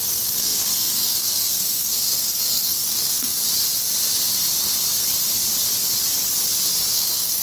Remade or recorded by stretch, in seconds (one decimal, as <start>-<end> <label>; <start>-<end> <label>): 0.0-3.3 remade; 3.3-6.9 recorded; 6.9-7.4 remade